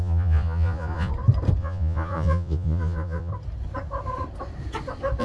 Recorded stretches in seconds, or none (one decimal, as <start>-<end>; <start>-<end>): 1.1-1.6; 3.3-5.2